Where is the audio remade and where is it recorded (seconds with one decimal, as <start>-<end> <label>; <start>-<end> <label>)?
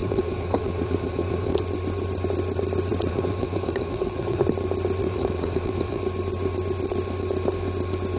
0.0-1.6 remade; 1.6-2.9 recorded; 2.9-4.4 remade; 4.4-5.0 recorded; 5.0-6.0 remade; 6.0-8.2 recorded